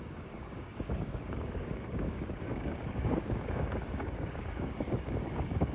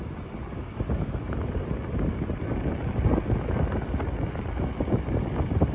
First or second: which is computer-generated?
first